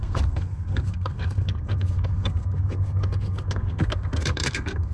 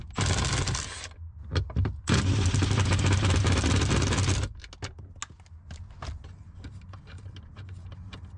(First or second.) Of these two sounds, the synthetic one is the first